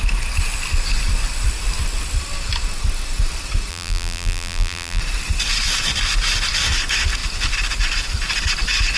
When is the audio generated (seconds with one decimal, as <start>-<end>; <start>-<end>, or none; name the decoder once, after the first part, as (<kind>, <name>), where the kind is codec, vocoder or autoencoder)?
3.7-5.0 (vocoder, BigVGAN v2)